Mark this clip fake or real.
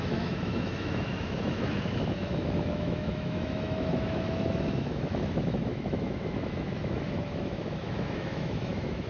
fake